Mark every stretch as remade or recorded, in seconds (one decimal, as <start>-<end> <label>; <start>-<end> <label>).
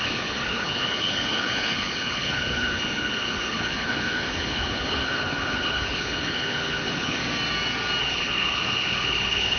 0.0-7.2 remade; 7.2-8.0 recorded; 8.0-9.6 remade